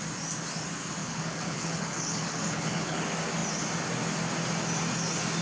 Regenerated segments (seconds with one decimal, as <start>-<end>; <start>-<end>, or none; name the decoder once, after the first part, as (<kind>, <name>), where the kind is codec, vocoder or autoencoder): 1.0-3.0 (codec, HILCodec)